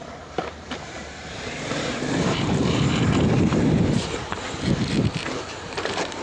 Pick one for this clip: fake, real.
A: fake